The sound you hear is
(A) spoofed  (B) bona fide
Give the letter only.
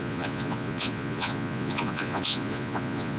A